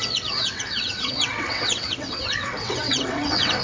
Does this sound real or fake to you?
fake